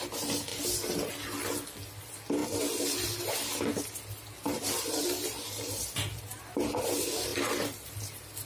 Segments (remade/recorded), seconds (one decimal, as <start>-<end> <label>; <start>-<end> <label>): 0.0-7.3 recorded; 7.3-7.9 remade; 7.9-8.5 recorded